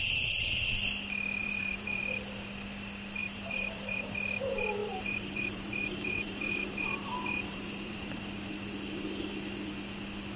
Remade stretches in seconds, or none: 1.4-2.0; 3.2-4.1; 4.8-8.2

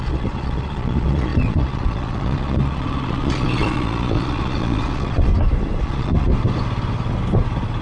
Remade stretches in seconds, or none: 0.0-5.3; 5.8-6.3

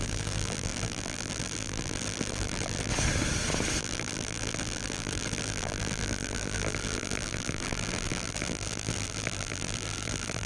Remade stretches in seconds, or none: 0.0-2.9; 3.8-10.5

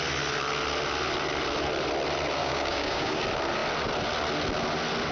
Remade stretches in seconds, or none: 2.4-3.2

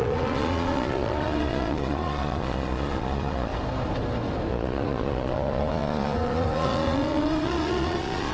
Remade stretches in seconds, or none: 0.0-3.5; 4.5-8.3

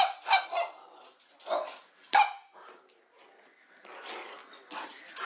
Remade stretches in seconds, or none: 2.0-3.2